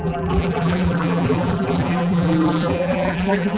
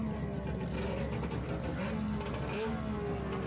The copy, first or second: first